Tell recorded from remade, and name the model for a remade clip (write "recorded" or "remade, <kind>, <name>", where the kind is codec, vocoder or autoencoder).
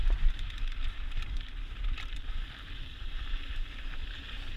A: remade, vocoder, BigVGAN v2